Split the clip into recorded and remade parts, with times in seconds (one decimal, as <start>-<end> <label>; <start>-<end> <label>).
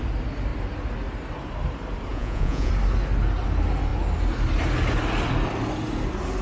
0.0-2.1 recorded; 2.1-2.7 remade; 2.7-6.4 recorded